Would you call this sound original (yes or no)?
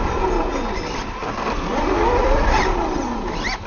yes